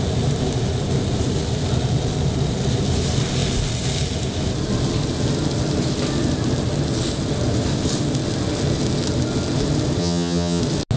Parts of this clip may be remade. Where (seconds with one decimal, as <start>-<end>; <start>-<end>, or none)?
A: 10.0-10.6